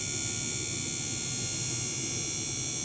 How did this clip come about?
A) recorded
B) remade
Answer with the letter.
A